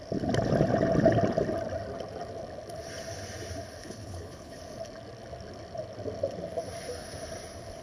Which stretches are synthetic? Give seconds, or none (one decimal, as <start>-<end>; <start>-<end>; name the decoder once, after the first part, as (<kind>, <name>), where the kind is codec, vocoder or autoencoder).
3.8-4.6 (codec, HILCodec)